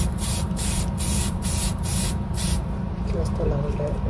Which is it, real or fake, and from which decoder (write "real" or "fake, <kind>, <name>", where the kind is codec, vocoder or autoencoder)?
fake, vocoder, BigVGAN v2